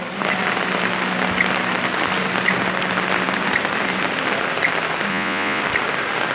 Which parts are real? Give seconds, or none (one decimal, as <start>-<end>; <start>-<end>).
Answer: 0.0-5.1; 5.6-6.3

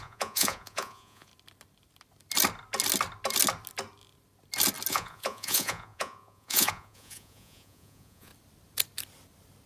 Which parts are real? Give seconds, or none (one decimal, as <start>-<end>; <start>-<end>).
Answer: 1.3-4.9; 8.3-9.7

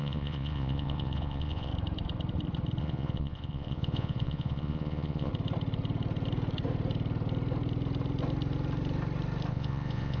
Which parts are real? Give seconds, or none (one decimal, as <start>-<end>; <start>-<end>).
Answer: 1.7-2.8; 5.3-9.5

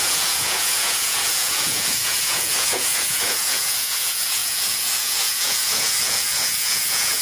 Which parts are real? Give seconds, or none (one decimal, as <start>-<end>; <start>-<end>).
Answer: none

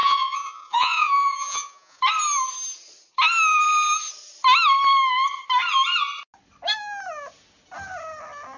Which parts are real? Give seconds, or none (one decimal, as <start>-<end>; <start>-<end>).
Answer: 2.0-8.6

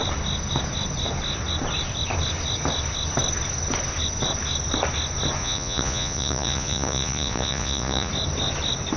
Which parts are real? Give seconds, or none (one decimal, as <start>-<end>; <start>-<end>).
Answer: 0.0-5.4; 8.1-9.0

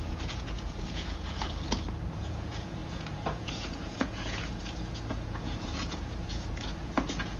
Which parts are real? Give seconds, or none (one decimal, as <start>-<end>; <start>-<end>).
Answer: 1.4-2.1

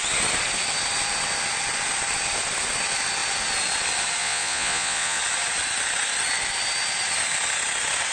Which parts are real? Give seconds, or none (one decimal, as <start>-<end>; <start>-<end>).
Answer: 0.0-4.2; 5.2-8.1